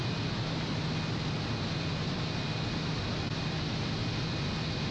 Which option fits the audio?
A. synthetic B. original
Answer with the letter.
B